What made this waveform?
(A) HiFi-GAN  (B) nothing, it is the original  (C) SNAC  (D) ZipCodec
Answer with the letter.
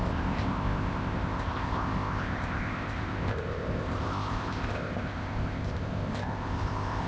D